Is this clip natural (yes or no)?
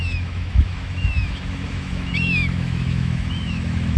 no